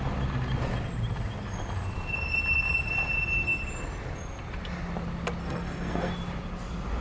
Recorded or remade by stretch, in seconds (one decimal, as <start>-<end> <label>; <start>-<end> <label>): 0.0-5.4 recorded; 5.4-6.1 remade; 6.1-7.0 recorded